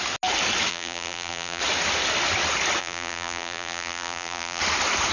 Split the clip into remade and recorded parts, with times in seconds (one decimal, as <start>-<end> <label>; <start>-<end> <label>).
0.0-0.7 recorded; 0.7-1.6 remade; 1.6-2.8 recorded; 2.8-4.6 remade; 4.6-5.1 recorded